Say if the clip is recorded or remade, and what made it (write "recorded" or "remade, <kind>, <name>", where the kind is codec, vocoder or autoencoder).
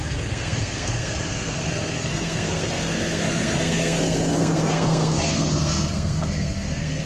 remade, codec, SNAC